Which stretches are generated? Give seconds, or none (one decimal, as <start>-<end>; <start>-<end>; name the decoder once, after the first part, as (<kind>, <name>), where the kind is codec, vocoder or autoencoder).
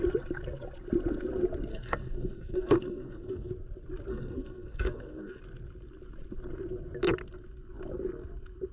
1.7-3.5 (codec, SNAC); 4.1-5.4